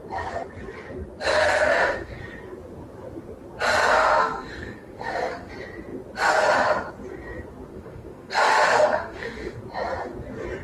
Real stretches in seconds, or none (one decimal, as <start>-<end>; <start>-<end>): 0.0-1.3; 2.2-3.7; 5.5-7.7; 9.6-10.6